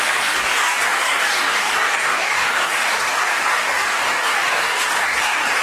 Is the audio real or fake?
fake